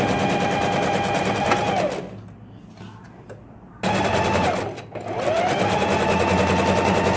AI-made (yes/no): no